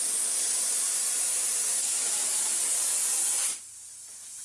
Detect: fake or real fake